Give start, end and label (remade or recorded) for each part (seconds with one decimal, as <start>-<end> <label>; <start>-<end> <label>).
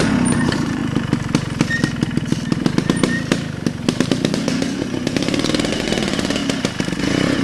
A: 0.0-0.8 remade; 0.8-4.3 recorded; 4.3-6.4 remade; 6.4-7.0 recorded; 7.0-7.4 remade